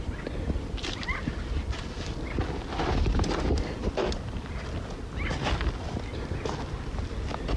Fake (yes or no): no